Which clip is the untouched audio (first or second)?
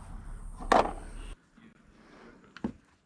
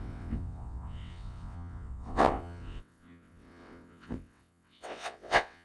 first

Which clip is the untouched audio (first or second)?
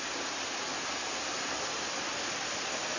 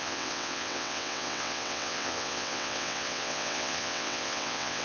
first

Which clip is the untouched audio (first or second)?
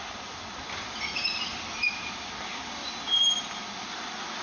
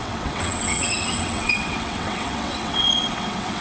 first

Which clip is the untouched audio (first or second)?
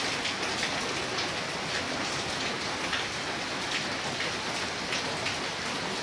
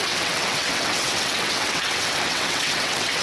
first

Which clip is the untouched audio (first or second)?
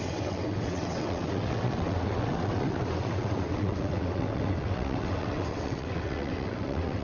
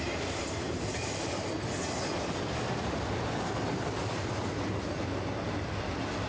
second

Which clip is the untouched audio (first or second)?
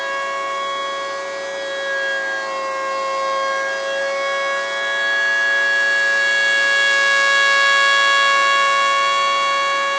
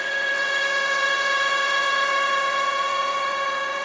first